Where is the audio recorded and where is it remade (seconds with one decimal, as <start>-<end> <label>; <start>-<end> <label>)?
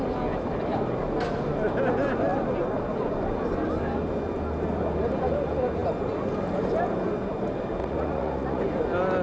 0.0-7.8 recorded; 7.8-8.6 remade; 8.6-9.2 recorded